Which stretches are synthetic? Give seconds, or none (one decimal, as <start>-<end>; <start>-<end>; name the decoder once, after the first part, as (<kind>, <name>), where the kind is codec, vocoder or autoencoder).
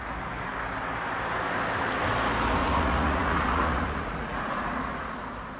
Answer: 2.6-5.1 (vocoder, Vocos)